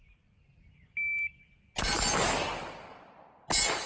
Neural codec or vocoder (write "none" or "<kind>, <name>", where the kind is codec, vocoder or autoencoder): none